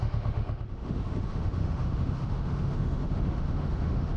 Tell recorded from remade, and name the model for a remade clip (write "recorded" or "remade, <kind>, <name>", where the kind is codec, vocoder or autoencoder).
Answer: remade, autoencoder, DAC-VAE